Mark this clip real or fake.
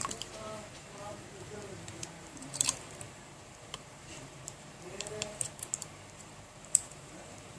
fake